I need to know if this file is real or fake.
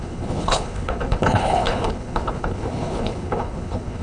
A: fake